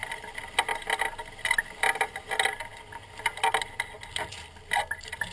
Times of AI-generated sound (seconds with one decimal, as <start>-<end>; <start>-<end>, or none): none